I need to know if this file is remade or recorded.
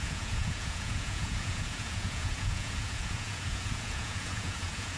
remade